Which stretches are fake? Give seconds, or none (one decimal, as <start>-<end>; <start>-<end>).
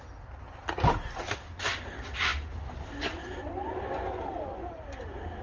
none